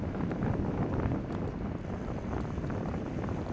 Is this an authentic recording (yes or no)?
yes